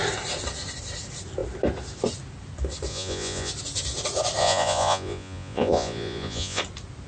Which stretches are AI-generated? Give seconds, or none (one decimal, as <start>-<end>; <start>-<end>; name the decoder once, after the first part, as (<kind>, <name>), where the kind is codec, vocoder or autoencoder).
2.9-3.5 (vocoder, Vocos); 4.4-6.6

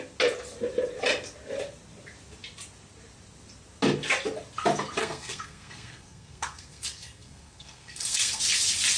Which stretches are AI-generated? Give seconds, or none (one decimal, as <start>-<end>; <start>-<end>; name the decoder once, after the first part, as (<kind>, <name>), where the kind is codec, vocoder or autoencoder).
5.0-8.4 (codec, SNAC)

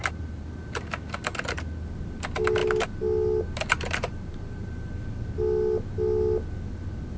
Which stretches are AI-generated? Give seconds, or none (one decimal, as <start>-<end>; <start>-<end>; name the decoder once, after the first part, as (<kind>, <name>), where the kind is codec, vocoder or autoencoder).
none